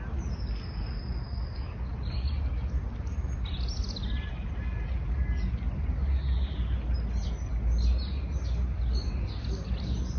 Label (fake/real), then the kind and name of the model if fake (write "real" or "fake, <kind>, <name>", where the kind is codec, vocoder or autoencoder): real